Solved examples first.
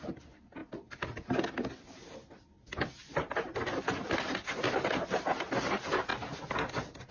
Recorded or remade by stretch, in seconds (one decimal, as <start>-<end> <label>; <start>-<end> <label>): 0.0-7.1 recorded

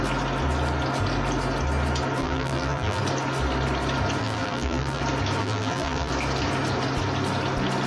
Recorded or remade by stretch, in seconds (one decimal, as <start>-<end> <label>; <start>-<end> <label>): 0.0-2.2 recorded; 2.2-3.0 remade; 3.0-4.2 recorded; 4.2-5.0 remade; 5.0-5.4 recorded; 5.4-6.1 remade; 6.1-7.9 recorded

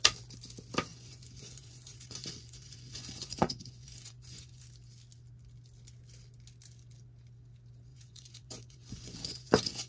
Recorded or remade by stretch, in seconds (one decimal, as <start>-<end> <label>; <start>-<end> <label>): 0.0-0.9 recorded; 0.9-4.6 remade; 4.6-7.9 recorded; 7.9-9.9 remade

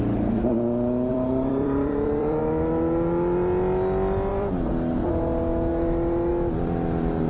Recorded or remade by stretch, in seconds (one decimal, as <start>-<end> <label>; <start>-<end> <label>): 0.0-1.1 recorded; 1.1-2.4 remade; 2.4-4.3 recorded; 4.3-5.2 remade; 5.2-7.3 recorded